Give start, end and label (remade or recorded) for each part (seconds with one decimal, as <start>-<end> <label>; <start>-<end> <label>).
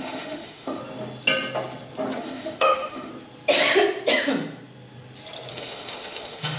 0.0-0.8 remade; 0.8-2.2 recorded; 2.2-3.1 remade; 3.1-5.5 recorded; 5.5-6.6 remade